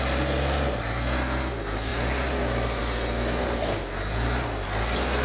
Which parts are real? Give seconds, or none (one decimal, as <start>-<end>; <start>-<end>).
0.0-5.2